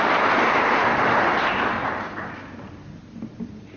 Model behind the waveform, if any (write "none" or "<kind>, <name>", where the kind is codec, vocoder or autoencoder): vocoder, BigVGAN v2